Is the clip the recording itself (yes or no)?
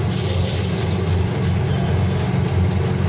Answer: yes